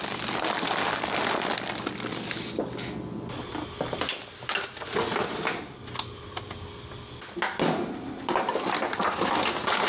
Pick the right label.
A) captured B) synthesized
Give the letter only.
A